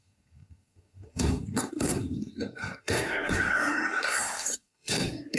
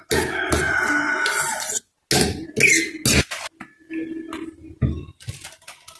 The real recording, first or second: second